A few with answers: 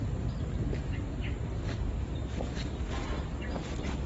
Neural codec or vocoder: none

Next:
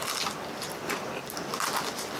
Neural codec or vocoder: none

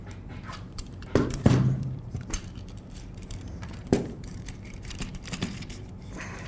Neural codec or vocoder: vocoder, BigVGAN v2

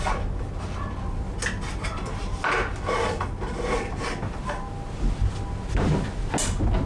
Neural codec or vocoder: none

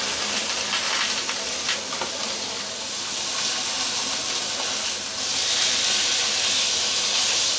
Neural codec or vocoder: none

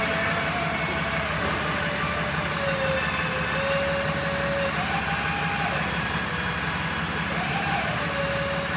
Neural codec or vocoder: none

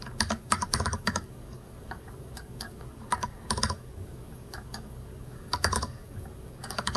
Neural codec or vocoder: codec, DAC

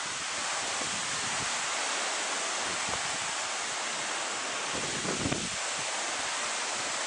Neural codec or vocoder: none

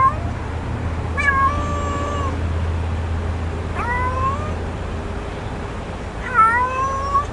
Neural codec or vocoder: none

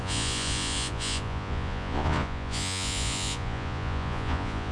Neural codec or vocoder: vocoder, Vocos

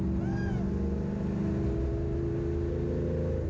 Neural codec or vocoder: none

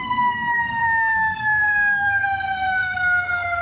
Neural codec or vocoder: codec, SNAC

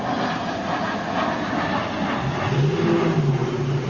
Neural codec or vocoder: none